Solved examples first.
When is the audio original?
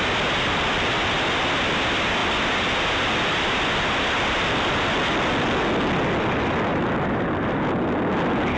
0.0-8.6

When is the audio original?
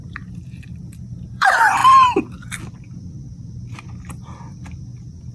1.8-5.3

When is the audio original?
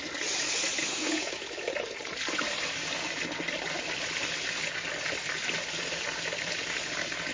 0.0-0.8; 1.7-7.3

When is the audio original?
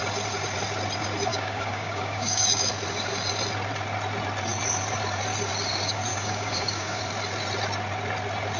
0.0-1.3; 2.7-6.1; 7.0-8.6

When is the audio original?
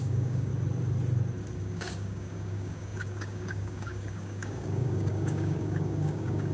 0.5-1.6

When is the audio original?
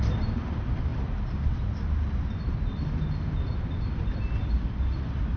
0.9-4.1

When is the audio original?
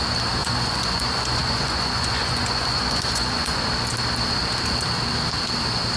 0.0-0.4; 3.6-6.0